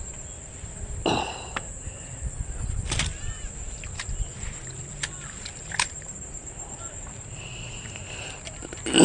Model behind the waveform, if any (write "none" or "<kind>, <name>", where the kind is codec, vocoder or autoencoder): vocoder, BigVGAN v2